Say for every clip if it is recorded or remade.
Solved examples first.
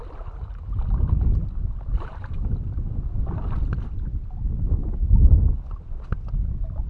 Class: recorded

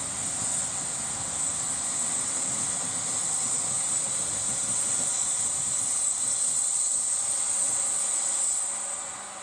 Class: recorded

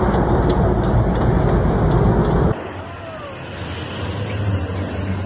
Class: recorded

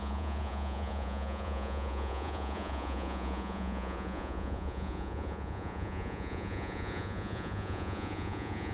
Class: remade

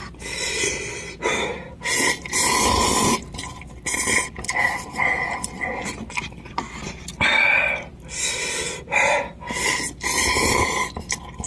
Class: recorded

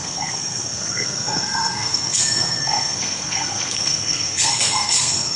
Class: remade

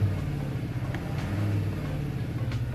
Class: recorded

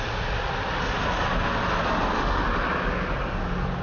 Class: recorded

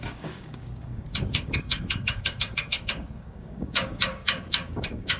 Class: remade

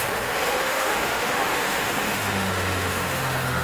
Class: remade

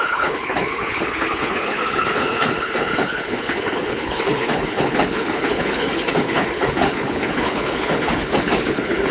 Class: remade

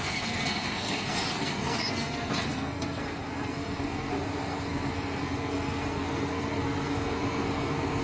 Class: remade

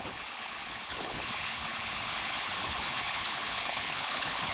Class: remade